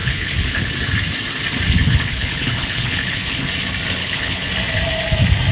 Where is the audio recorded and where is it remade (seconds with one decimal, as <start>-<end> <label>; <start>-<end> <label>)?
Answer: 0.0-0.7 remade; 0.7-1.8 recorded; 1.8-3.5 remade; 3.5-4.0 recorded; 4.0-4.5 remade; 4.5-5.5 recorded

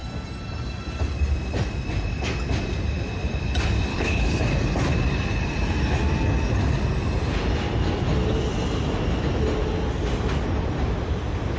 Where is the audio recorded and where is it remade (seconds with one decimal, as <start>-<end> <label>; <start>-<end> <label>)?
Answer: 0.0-3.9 recorded; 3.9-4.4 remade; 4.4-11.6 recorded

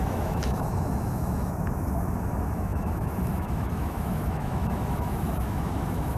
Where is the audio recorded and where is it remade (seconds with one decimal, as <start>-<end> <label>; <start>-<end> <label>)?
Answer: 0.0-6.2 remade

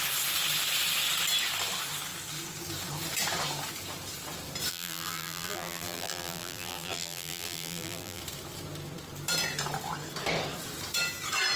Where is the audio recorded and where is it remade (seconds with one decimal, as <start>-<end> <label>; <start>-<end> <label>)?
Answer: 0.0-4.7 recorded; 4.7-8.2 remade; 8.2-11.6 recorded

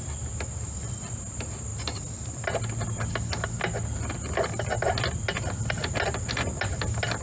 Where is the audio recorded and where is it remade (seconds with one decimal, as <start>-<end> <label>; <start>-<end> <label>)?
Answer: 0.0-7.2 recorded

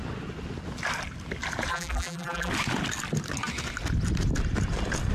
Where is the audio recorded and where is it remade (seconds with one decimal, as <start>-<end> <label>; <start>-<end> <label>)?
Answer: 0.0-1.7 recorded; 1.7-2.5 remade; 2.5-5.1 recorded